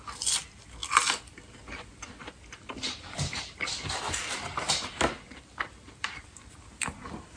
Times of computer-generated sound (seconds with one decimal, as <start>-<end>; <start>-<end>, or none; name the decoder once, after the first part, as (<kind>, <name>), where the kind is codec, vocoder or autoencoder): none